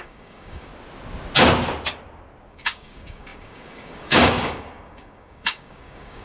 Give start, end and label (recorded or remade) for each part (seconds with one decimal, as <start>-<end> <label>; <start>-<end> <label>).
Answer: 0.0-0.7 remade; 0.7-2.5 recorded; 2.5-6.2 remade